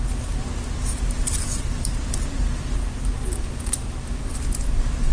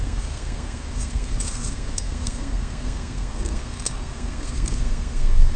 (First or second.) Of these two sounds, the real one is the first